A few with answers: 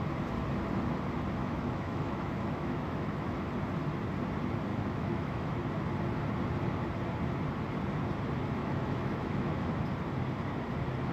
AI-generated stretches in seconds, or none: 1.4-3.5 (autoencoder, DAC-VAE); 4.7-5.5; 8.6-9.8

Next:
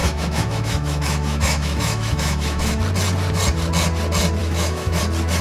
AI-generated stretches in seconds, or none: 0.0-2.8 (autoencoder, DAC-VAE); 4.4-5.0

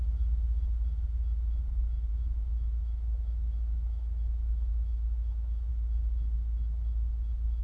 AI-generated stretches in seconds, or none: 2.1-5.7 (autoencoder, DAC-VAE)

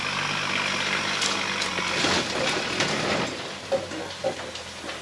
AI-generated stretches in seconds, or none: none

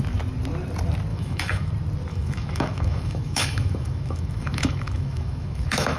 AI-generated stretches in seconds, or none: 1.1-1.7 (autoencoder, DAC-VAE); 2.1-6.0

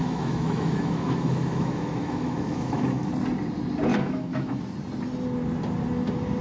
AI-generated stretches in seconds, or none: 0.0-3.1 (autoencoder, DAC-VAE); 3.9-4.6